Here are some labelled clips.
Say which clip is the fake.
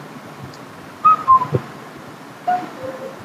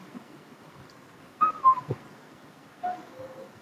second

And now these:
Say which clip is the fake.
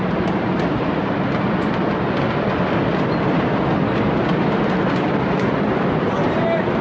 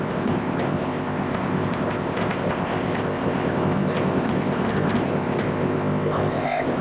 second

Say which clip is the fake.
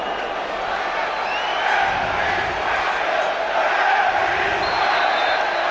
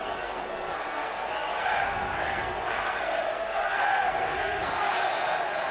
second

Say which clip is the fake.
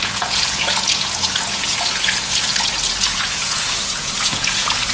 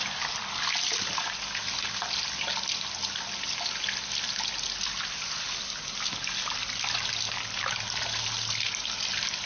first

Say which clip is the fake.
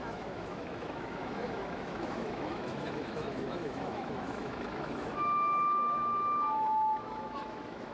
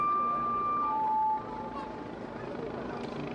first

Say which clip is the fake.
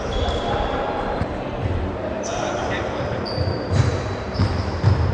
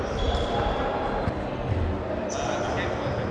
first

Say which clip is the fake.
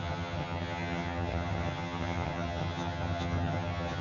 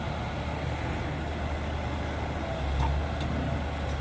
first